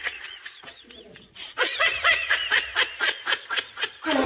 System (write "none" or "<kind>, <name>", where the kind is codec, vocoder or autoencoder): vocoder, Vocos